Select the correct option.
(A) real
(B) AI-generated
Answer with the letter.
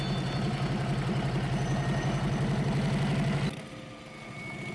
A